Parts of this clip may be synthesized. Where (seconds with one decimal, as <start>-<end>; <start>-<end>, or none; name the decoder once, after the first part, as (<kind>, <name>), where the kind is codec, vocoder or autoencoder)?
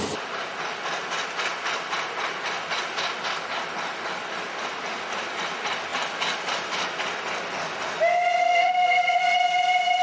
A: 8.4-9.2 (codec, SNAC)